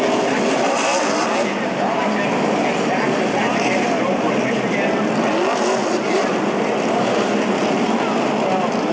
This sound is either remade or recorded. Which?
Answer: recorded